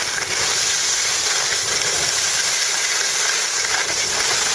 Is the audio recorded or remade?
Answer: recorded